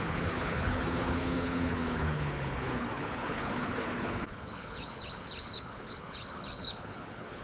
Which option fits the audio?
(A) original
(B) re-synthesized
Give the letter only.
B